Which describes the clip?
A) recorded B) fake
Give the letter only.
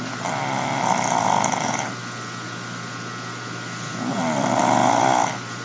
A